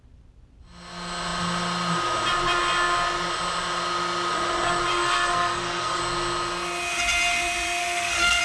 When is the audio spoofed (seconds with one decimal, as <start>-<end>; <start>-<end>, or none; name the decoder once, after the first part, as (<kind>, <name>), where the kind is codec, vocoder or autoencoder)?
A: 4.9-6.0 (codec, SNAC); 7.8-8.4